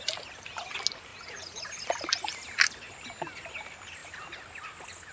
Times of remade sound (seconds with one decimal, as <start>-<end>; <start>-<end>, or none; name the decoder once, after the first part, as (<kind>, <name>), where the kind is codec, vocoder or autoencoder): 1.1-1.6 (vocoder, Vocos)